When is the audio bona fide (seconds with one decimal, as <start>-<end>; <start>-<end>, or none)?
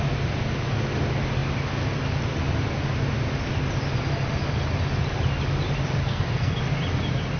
0.0-6.0; 6.6-7.4